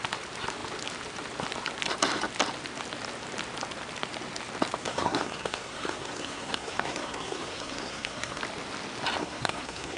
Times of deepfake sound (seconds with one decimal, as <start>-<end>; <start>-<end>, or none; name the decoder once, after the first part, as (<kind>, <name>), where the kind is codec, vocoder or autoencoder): 4.8-8.4 (codec, SNAC); 9.2-10.0